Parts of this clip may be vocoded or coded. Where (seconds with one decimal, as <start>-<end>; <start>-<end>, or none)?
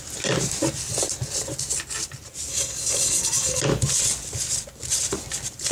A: 2.5-3.6